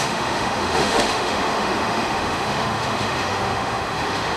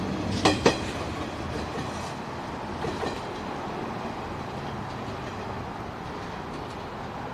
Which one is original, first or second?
second